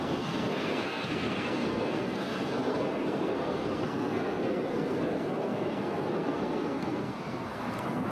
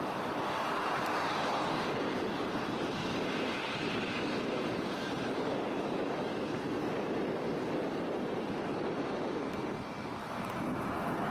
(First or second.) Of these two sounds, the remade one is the first